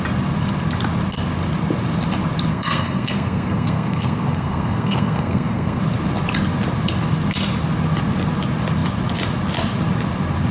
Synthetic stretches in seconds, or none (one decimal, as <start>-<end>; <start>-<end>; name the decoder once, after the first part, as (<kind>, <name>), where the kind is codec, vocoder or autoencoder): 2.5-5.8 (codec, SNAC)